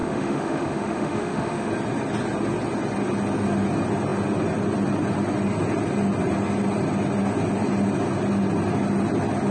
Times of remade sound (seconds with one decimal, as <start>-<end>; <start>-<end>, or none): 0.0-1.7